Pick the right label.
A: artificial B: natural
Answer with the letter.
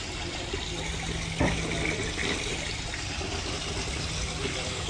B